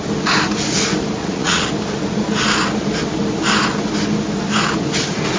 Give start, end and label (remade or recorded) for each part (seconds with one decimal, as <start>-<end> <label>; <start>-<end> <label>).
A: 0.0-1.2 recorded; 1.2-1.7 remade; 1.7-5.4 recorded